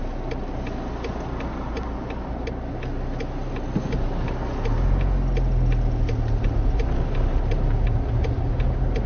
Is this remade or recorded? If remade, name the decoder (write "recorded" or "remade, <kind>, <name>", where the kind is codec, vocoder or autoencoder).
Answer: recorded